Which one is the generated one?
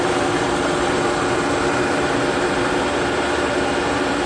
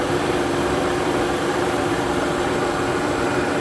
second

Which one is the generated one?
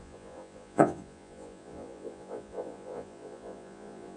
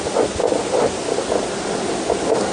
first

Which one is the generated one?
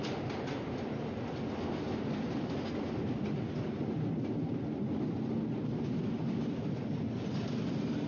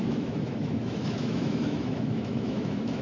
second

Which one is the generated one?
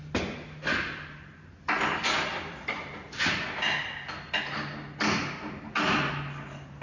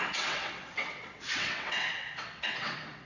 second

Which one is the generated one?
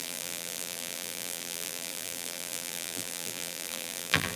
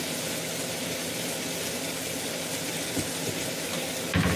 first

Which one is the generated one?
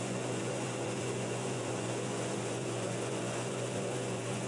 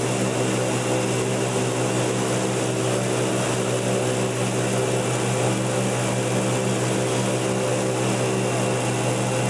first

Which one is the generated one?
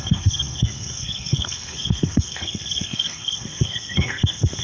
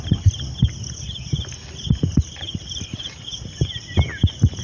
first